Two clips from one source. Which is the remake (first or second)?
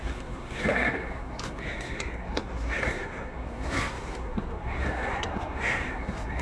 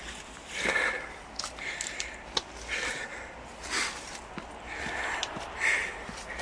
first